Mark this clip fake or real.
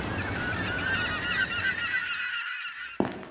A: real